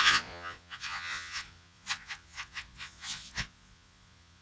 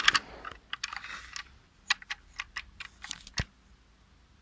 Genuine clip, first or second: second